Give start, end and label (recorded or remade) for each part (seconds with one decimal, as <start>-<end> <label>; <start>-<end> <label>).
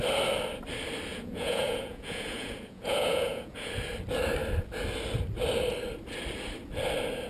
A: 0.0-1.1 recorded; 1.1-3.7 remade; 3.7-7.3 recorded